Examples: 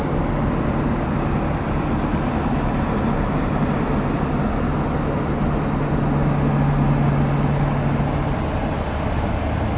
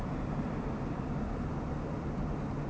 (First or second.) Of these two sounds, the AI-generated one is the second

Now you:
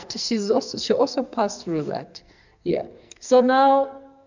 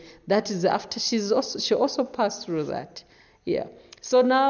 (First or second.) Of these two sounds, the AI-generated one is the first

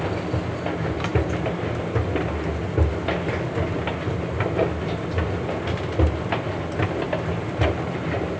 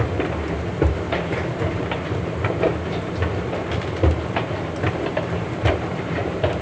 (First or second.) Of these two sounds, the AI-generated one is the second